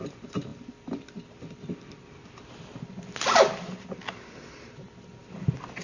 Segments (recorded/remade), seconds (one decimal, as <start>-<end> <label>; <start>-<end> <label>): 0.0-5.8 recorded